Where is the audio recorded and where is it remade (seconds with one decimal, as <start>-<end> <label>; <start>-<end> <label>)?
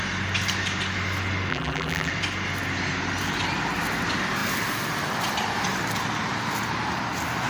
0.0-1.5 recorded; 1.5-2.1 remade; 2.1-7.5 recorded